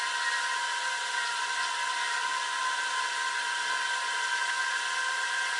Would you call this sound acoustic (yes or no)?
yes